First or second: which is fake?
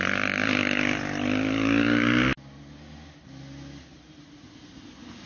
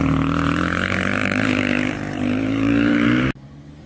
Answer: second